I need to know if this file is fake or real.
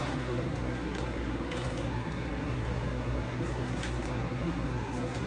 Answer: fake